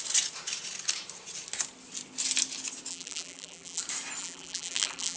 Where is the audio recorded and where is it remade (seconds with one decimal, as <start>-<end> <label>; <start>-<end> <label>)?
0.0-2.9 recorded; 2.9-3.8 remade; 3.8-4.2 recorded; 4.2-5.2 remade